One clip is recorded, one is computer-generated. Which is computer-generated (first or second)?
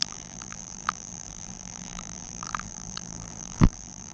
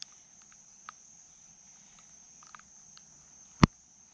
first